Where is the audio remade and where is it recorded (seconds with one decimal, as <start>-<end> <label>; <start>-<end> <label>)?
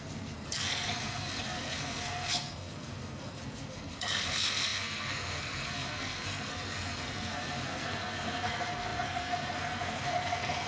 0.0-10.7 remade